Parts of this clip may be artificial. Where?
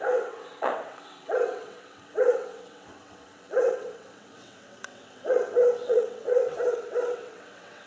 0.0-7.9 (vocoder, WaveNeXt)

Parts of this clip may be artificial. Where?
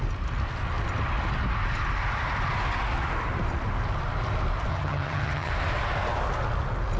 4.7-5.5 (vocoder, HiFi-GAN)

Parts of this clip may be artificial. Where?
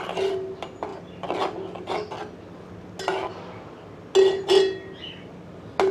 none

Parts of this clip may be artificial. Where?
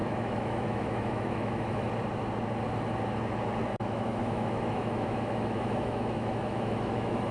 0.0-1.9 (autoencoder, DAC-VAE); 3.7-7.3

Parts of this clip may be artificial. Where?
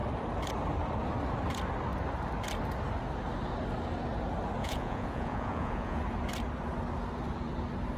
4.6-6.0 (vocoder, Vocos)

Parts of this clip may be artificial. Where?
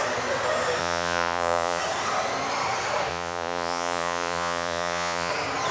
0.8-1.8 (vocoder, Vocos); 3.1-5.3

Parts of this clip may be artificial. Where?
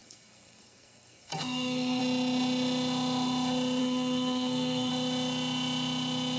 0.0-2.0 (codec, SNAC); 3.8-4.9